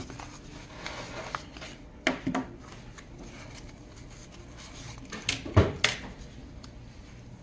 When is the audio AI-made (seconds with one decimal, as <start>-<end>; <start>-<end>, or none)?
6.4-7.4